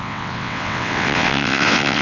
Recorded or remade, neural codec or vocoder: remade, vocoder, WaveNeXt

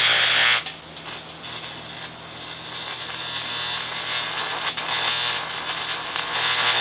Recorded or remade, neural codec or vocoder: recorded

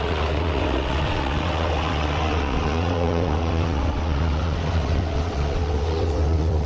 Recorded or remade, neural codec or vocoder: remade, vocoder, WaveNeXt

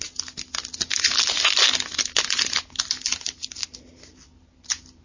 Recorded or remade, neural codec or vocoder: recorded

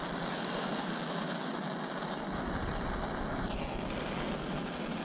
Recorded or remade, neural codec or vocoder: recorded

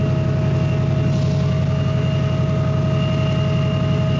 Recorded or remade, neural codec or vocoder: recorded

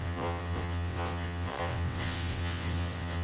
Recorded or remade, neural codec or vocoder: remade, vocoder, WaveNeXt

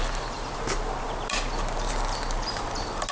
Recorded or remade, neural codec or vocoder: recorded